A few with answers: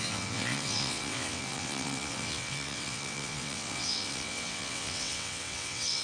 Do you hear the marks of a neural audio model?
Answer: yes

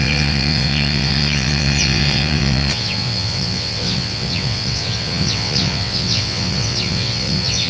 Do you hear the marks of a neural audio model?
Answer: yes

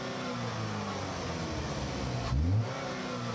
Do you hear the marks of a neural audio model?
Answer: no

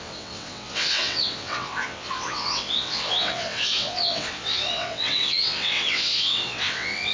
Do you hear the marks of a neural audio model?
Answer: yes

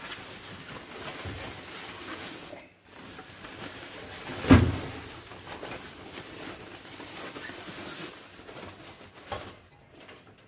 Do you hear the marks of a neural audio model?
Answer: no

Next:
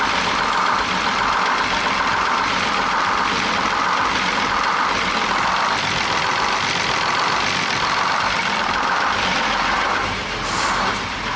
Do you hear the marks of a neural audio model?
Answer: no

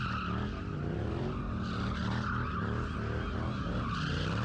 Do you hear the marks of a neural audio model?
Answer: no